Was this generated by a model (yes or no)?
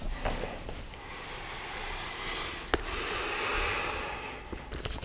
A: no